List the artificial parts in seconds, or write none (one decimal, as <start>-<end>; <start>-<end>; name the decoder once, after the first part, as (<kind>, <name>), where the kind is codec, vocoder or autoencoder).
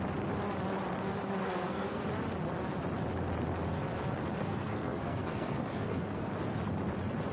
1.4-2.0 (codec, SNAC); 4.4-6.3